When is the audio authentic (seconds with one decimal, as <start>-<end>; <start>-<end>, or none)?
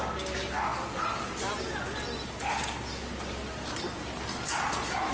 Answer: 0.0-5.1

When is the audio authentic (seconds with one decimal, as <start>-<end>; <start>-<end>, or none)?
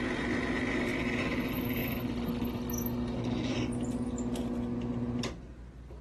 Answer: 0.0-6.0